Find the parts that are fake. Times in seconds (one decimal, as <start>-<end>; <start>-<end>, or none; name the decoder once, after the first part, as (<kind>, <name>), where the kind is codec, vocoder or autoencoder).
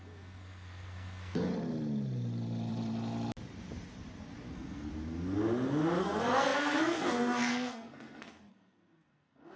0.0-1.5 (codec, SNAC); 4.5-4.9; 6.0-9.6